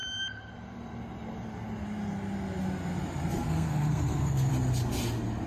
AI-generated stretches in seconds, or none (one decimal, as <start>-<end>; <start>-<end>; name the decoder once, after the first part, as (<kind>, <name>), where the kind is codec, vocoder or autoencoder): 3.3-4.5 (codec, SNAC)